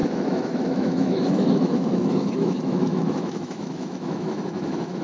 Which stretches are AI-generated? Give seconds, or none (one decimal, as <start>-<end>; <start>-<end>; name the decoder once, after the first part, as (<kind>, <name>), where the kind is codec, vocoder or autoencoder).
0.0-5.0 (autoencoder, DAC-VAE)